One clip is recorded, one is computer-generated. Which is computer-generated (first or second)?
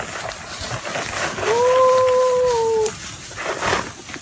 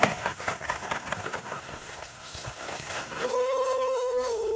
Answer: second